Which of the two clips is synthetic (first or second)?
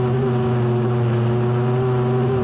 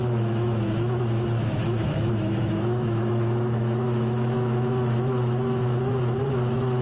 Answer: second